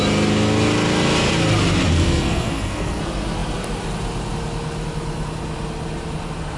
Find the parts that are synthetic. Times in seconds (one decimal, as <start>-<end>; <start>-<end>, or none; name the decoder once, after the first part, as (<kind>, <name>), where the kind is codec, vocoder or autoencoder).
1.9-3.0 (codec, SNAC)